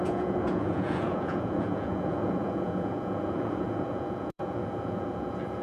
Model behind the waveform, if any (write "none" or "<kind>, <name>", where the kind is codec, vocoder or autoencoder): vocoder, Vocos